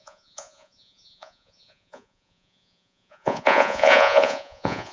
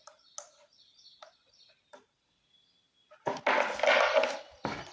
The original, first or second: second